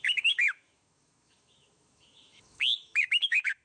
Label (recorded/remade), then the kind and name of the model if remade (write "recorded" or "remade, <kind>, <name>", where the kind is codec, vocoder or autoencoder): remade, autoencoder, DAC-VAE